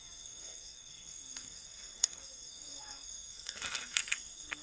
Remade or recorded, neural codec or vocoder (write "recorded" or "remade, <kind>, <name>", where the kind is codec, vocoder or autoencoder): remade, codec, SNAC